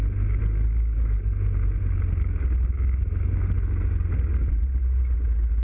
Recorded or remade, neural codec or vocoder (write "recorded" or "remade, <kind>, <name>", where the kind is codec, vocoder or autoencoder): recorded